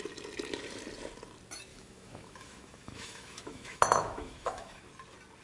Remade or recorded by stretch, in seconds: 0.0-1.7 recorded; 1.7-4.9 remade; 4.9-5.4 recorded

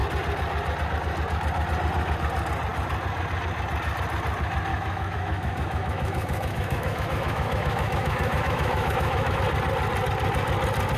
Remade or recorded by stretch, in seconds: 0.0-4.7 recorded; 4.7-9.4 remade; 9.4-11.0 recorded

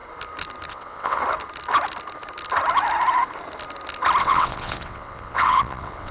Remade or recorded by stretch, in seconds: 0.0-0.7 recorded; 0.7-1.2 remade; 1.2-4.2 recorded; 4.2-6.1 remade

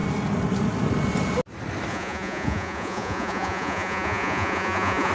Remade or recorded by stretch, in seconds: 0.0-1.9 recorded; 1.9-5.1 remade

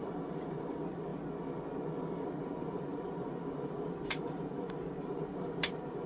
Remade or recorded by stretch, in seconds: 0.0-1.1 remade; 1.1-2.0 recorded; 2.0-6.1 remade